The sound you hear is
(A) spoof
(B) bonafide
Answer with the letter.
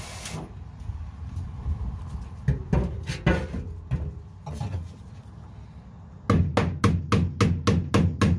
B